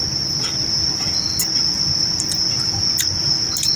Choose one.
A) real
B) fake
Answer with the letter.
A